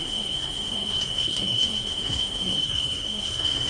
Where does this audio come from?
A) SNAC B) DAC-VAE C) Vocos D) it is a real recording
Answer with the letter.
A